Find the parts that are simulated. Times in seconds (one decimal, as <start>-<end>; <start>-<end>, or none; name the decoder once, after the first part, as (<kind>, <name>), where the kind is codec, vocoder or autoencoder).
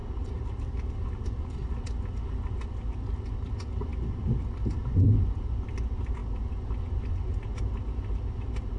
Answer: 0.0-1.5 (vocoder, BigVGAN v2)